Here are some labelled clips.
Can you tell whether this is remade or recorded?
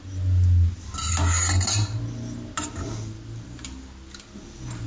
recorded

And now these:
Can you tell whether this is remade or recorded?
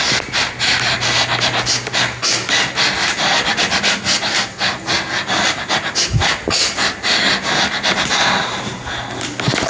recorded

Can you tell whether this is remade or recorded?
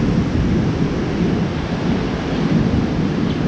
recorded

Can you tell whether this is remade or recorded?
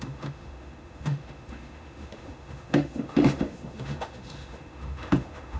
remade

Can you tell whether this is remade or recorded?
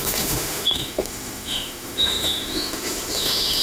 remade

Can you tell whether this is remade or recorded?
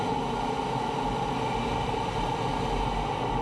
recorded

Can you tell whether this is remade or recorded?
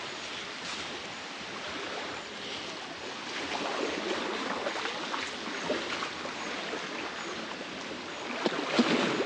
recorded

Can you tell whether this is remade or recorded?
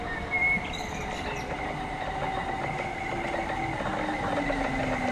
recorded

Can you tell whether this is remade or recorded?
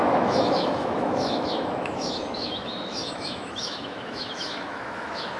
remade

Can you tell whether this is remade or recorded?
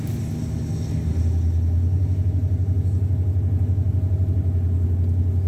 recorded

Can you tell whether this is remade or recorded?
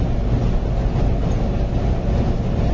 recorded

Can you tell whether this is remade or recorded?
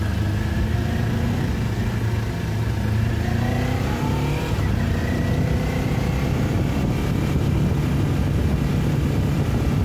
recorded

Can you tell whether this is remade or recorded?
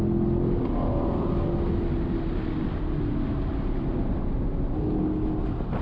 recorded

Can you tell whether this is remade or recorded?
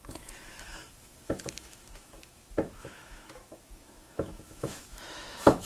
remade